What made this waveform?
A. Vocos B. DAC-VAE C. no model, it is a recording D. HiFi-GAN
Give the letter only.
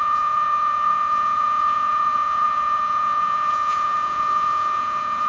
A